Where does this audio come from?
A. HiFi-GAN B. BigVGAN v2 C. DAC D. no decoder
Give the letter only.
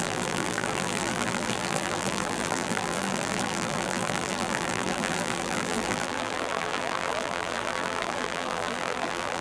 B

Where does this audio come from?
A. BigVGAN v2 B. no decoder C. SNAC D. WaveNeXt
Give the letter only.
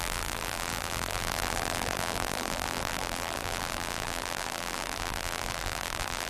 A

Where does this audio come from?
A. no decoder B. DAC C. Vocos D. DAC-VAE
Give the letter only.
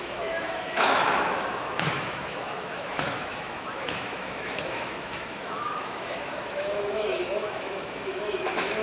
D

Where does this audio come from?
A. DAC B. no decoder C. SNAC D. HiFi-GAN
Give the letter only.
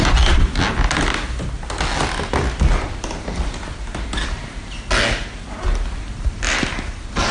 B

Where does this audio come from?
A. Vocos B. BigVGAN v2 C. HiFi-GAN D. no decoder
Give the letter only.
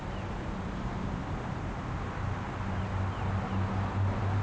D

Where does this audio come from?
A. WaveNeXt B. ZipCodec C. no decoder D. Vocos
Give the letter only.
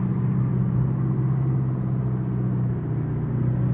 C